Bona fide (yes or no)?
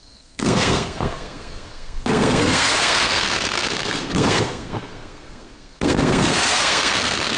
no